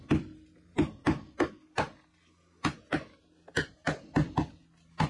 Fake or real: real